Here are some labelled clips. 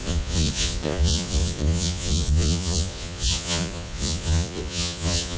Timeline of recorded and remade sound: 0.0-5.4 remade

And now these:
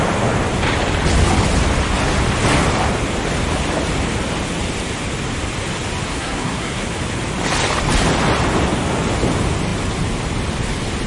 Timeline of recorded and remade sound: 0.0-6.1 recorded; 6.1-6.9 remade; 6.9-11.1 recorded